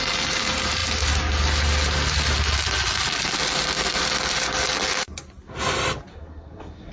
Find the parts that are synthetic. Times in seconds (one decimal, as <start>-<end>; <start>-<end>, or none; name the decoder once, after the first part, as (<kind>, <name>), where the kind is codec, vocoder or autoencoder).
6.1-6.9 (codec, SNAC)